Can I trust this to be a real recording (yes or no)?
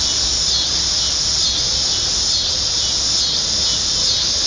yes